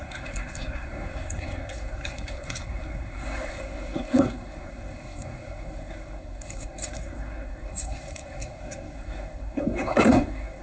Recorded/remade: remade